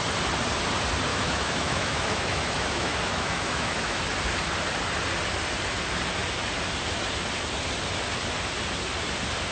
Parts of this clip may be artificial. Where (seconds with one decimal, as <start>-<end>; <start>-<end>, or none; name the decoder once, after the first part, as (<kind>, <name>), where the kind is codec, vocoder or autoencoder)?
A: 1.1-4.0 (autoencoder, DAC-VAE)